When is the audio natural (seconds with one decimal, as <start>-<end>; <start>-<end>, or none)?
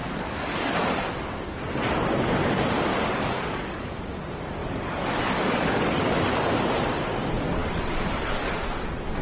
1.1-2.9; 3.8-4.6; 6.1-7.6; 8.5-9.2